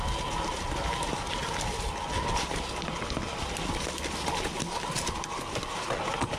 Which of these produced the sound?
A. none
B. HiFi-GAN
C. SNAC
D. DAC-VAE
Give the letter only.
A